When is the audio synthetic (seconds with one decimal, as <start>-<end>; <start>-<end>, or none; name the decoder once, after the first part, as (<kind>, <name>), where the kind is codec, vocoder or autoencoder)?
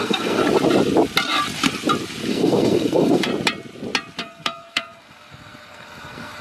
0.0-0.4 (codec, SNAC); 2.3-3.3; 4.2-6.4